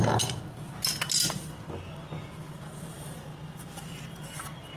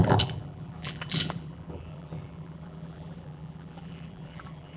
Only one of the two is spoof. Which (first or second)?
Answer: second